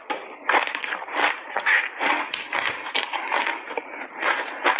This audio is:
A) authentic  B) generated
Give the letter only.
B